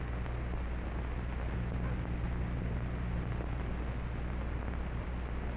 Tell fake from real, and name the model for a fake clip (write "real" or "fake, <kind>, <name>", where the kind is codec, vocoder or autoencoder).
real